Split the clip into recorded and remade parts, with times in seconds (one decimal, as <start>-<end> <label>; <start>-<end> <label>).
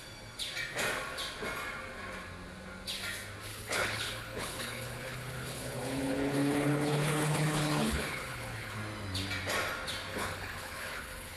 0.0-3.5 recorded; 3.5-8.8 remade; 8.8-10.1 recorded; 10.1-11.4 remade